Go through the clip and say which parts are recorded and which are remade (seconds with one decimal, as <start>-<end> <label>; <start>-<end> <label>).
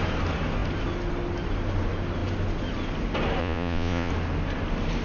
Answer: 0.0-3.4 recorded; 3.4-4.1 remade; 4.1-5.0 recorded